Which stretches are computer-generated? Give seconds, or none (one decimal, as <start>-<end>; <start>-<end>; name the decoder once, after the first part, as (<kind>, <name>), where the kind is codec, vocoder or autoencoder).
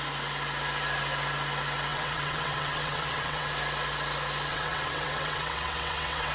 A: 1.9-3.5 (vocoder, WaveNeXt); 4.5-6.3